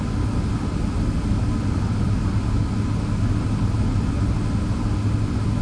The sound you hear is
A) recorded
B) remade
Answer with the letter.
A